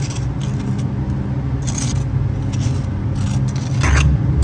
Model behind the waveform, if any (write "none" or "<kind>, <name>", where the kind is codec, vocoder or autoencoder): none